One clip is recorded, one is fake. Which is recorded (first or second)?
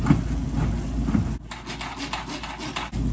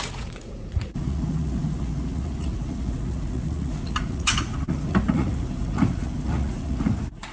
first